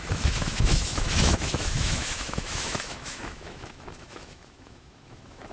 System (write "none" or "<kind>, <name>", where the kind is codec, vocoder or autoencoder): autoencoder, DAC-VAE